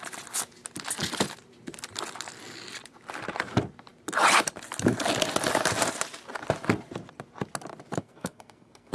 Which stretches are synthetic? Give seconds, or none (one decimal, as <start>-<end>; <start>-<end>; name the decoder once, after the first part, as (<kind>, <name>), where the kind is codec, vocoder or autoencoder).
8.0-8.9 (codec, SNAC)